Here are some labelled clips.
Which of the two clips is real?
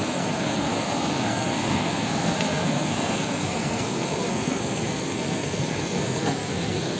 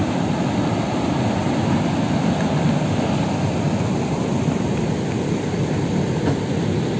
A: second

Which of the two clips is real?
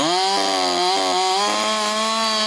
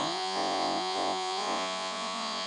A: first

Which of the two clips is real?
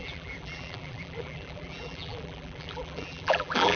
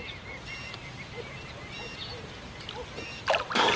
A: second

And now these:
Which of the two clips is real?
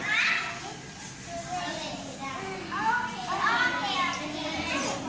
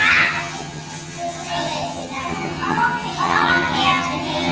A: first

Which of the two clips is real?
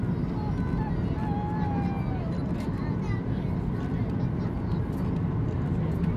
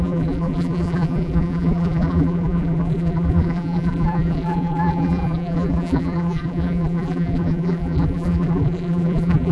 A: first